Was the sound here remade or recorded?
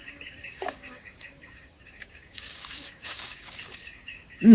remade